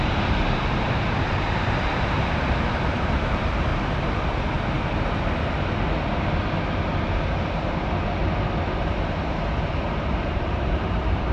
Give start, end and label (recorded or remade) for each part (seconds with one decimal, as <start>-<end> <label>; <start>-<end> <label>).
0.0-3.7 remade; 3.7-8.9 recorded; 8.9-11.3 remade